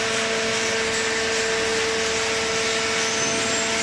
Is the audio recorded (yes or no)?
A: yes